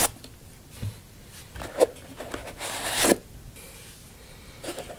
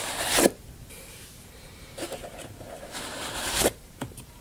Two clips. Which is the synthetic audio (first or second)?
second